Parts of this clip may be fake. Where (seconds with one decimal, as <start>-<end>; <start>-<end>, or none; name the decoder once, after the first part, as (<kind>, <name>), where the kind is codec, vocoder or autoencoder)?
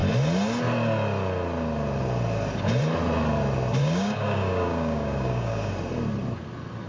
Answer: 3.8-5.7 (codec, DAC)